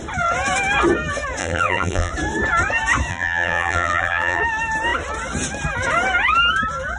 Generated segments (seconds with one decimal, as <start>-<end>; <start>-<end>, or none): 1.4-2.1; 3.1-4.4